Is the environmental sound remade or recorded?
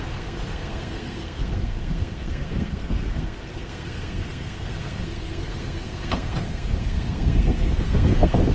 remade